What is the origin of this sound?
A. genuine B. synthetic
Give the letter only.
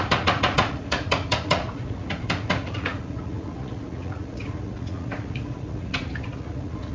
B